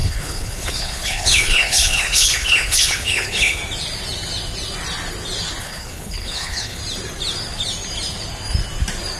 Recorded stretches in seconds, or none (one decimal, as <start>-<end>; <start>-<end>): 3.6-5.6; 6.8-9.2